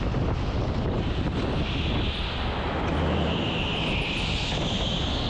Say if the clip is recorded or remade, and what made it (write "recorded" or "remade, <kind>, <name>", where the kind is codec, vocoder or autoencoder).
recorded